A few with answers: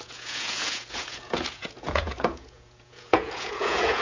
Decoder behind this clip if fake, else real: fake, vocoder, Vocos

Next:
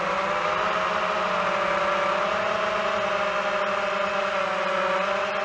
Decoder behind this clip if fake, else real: real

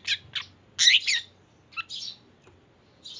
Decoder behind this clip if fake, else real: real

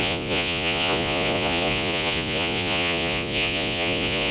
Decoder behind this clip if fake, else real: fake, vocoder, Vocos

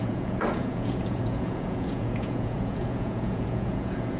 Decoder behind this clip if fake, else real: fake, vocoder, Vocos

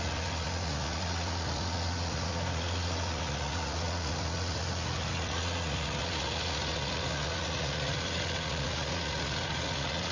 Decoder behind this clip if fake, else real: fake, vocoder, Vocos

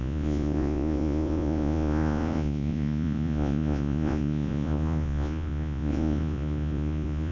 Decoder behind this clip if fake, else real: fake, vocoder, Vocos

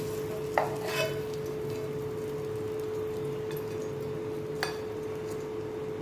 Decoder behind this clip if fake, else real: real